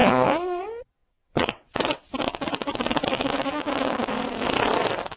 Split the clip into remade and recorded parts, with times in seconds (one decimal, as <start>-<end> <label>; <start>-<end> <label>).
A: 0.0-0.6 remade; 0.6-1.0 recorded; 1.0-4.1 remade; 4.1-5.2 recorded